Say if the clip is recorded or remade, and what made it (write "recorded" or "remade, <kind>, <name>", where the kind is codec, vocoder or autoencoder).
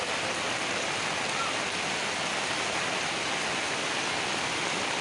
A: recorded